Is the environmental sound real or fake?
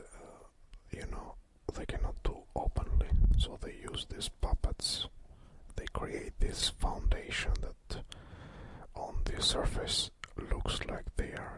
real